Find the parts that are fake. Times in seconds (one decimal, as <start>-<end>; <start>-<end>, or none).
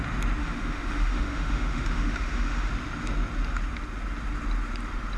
0.4-2.7